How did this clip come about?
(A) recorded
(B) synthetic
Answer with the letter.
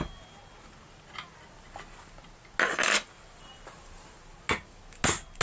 A